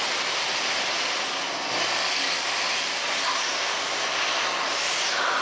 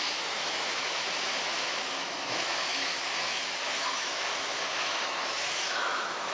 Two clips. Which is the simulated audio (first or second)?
second